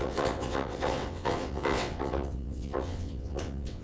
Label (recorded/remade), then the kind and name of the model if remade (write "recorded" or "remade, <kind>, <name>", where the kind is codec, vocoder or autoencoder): remade, vocoder, WaveNeXt